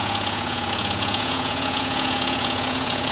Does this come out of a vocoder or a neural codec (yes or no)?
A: yes